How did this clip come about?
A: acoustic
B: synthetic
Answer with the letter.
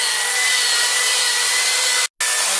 A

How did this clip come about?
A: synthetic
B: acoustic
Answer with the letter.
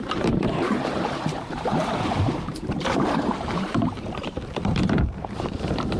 A